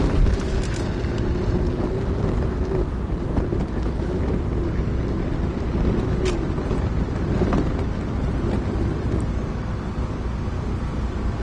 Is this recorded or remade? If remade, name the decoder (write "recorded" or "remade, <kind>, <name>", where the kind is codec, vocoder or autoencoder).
recorded